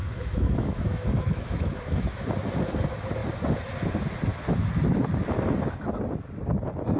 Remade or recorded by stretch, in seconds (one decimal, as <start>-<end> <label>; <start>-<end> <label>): 0.0-2.3 remade; 2.3-7.0 recorded